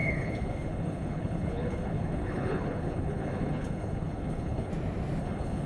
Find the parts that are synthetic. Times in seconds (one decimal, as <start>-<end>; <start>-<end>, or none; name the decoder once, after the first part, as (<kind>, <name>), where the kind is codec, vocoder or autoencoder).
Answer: 0.0-4.7 (codec, HILCodec); 5.2-5.7